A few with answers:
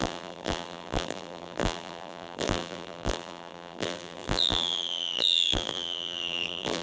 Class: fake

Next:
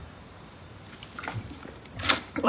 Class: fake